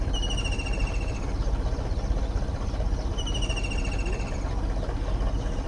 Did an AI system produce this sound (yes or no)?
no